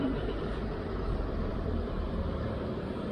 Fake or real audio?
fake